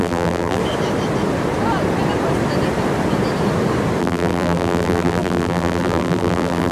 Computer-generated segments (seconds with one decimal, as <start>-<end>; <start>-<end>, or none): 0.0-0.6; 4.0-6.7